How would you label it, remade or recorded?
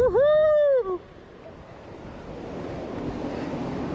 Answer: recorded